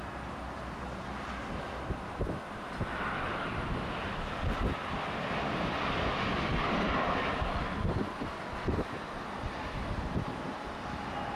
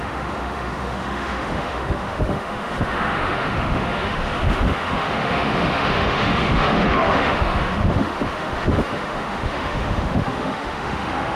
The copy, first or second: second